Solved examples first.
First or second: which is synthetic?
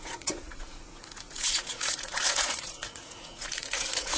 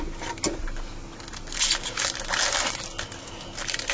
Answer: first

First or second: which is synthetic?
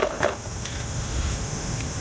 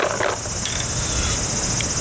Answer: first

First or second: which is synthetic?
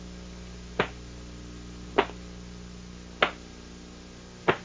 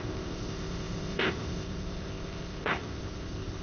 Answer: second